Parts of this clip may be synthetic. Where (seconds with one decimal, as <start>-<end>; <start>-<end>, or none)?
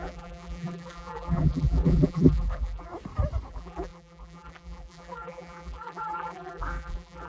0.0-2.9; 3.5-7.3